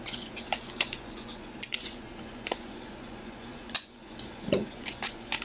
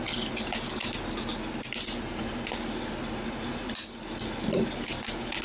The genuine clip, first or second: second